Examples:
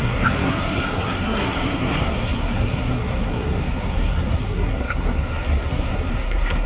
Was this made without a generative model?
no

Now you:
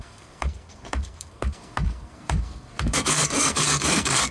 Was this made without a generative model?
no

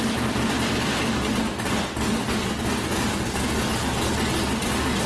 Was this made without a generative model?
yes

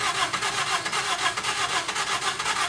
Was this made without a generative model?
yes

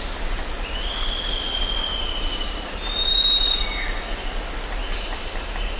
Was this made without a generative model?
yes